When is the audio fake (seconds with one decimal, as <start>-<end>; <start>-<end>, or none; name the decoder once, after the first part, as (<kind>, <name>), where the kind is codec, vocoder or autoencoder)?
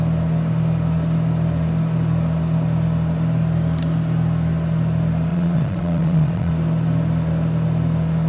5.3-6.5 (vocoder, Vocos)